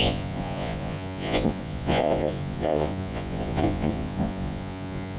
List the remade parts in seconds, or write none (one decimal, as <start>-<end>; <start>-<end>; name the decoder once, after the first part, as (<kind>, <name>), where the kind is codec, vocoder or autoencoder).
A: 0.0-5.2 (vocoder, Vocos)